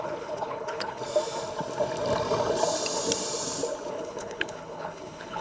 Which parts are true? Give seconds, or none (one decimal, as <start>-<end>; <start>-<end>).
1.0-3.9